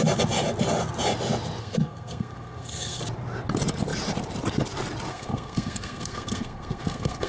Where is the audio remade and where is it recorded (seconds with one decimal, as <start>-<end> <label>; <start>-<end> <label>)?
0.0-1.6 recorded; 1.6-3.0 remade; 3.0-5.1 recorded; 5.1-7.3 remade